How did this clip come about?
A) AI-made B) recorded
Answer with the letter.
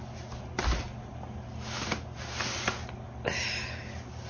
B